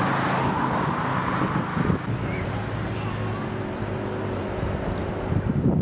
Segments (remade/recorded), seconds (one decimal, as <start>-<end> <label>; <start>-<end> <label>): 0.0-5.0 recorded; 5.0-5.8 remade